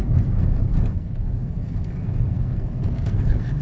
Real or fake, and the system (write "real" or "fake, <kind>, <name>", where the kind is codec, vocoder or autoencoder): fake, codec, SNAC